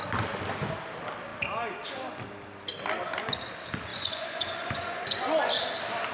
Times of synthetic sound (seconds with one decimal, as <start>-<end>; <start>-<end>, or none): 3.9-5.5